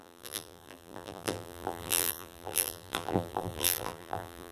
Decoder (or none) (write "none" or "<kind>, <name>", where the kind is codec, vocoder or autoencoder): vocoder, BigVGAN v2